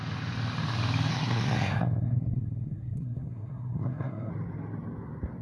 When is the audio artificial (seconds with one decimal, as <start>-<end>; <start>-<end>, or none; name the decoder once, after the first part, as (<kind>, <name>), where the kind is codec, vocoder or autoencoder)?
1.1-4.3 (codec, SNAC)